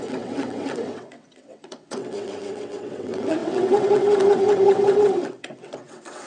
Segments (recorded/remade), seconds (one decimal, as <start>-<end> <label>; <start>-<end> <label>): 0.0-6.3 remade